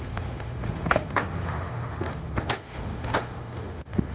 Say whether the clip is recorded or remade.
remade